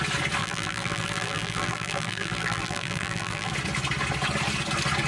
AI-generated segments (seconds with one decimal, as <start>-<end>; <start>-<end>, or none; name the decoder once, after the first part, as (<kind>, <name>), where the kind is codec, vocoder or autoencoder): 0.4-3.5 (vocoder, BigVGAN v2)